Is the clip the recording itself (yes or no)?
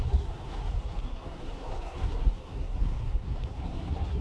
no